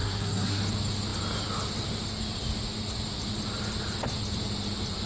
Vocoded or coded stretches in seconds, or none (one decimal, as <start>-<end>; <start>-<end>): 0.0-0.6

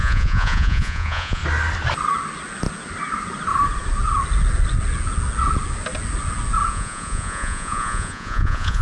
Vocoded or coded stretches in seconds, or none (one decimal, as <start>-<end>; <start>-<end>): 0.0-1.4; 6.7-8.8

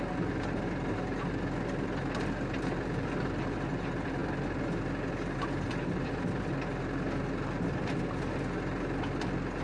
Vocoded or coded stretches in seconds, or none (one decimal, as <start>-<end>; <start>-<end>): none